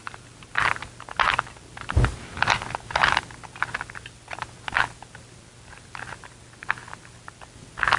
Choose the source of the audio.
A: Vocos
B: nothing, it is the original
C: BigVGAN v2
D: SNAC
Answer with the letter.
B